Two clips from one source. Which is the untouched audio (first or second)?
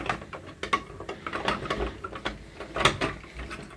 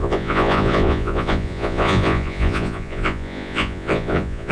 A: first